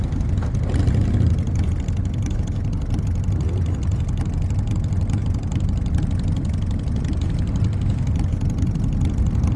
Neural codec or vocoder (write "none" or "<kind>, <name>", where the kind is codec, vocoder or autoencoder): none